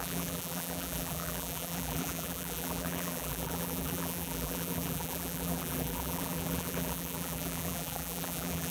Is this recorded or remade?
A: remade